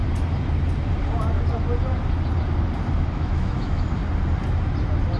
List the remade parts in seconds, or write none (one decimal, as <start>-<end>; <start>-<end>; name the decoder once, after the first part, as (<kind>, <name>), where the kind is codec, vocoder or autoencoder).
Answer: 3.1-4.0 (autoencoder, DAC-VAE)